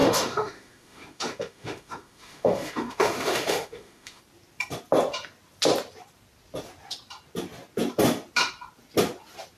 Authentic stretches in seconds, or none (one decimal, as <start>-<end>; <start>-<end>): 4.2-9.6